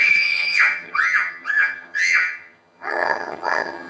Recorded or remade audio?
remade